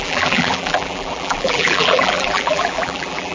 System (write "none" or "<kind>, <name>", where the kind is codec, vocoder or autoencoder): vocoder, BigVGAN v2